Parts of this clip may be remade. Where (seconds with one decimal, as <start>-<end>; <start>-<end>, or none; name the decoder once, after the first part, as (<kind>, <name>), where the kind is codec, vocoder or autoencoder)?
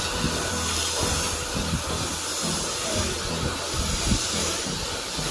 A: none